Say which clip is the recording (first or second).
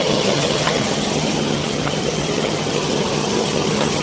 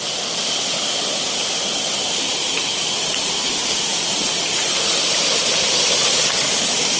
second